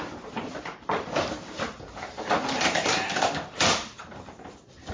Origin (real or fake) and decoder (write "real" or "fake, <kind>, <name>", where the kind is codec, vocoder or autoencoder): fake, vocoder, BigVGAN v2